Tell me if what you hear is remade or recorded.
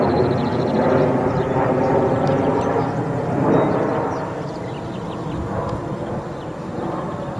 recorded